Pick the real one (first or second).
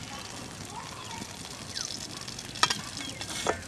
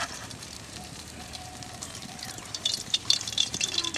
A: first